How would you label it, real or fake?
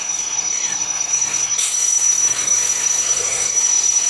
fake